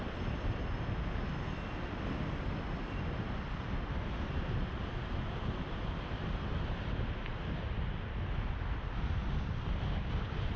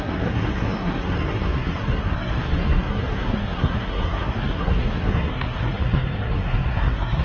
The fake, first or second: second